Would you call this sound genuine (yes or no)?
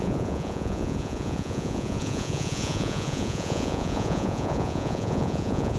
no